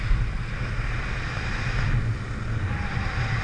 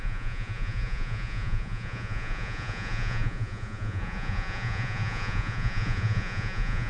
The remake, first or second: second